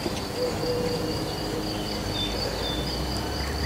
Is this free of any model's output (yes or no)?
yes